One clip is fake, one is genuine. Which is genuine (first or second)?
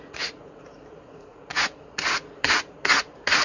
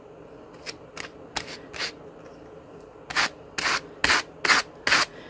second